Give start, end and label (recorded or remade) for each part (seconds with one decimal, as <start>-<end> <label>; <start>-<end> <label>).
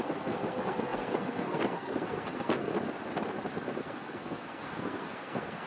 0.0-2.7 remade; 2.7-3.8 recorded; 3.8-5.7 remade